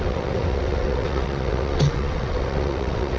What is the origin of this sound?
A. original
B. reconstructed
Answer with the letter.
B